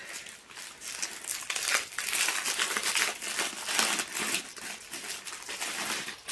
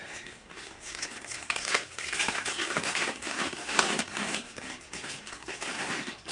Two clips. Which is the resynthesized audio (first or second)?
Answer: second